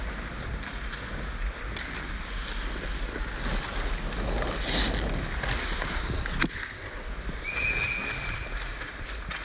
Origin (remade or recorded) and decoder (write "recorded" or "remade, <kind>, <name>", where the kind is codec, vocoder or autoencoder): recorded